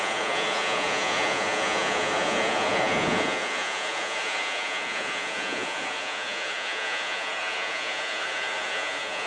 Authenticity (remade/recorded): remade